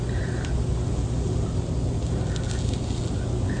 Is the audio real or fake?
real